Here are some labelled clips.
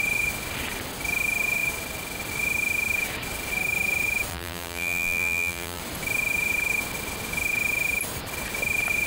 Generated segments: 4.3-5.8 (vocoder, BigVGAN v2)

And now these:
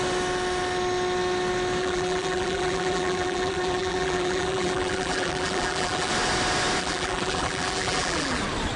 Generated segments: 1.8-6.1 (vocoder, BigVGAN v2); 6.8-8.4

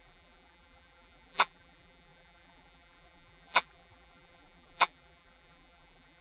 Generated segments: 0.0-6.2 (vocoder, BigVGAN v2)